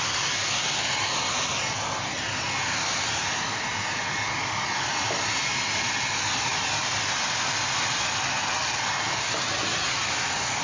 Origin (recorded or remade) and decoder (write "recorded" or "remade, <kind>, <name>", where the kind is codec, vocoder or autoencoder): recorded